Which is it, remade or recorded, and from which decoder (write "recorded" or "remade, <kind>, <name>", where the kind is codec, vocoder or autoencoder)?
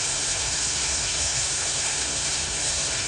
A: remade, codec, SNAC